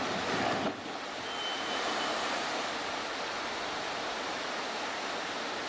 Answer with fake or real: real